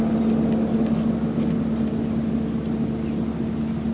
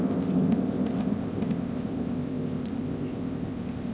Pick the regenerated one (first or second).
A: second